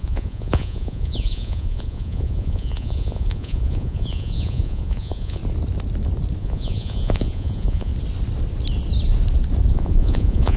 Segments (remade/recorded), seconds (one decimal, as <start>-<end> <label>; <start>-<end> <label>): 0.0-5.4 remade; 5.4-6.4 recorded; 6.4-7.9 remade; 7.9-9.7 recorded; 9.7-10.6 remade